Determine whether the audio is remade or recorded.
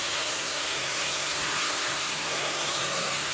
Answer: remade